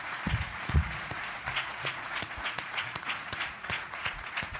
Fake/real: fake